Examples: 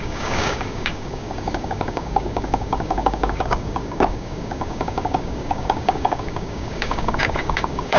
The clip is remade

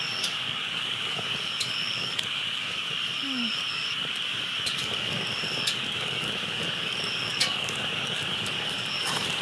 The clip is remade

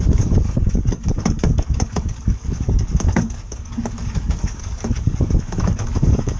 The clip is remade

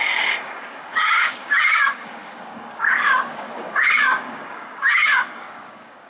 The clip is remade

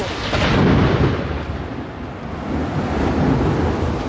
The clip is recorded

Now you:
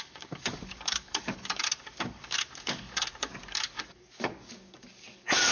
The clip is remade